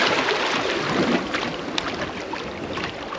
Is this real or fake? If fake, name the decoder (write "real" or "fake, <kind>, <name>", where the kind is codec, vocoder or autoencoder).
real